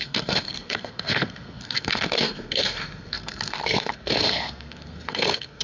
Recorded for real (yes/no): no